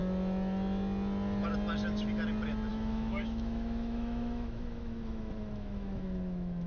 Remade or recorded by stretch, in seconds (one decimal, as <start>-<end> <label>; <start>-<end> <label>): 0.0-2.7 recorded; 2.7-6.7 remade